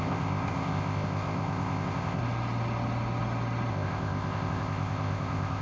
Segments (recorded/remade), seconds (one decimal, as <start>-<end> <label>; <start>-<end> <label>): 0.0-2.2 remade; 2.2-3.7 recorded; 3.7-5.6 remade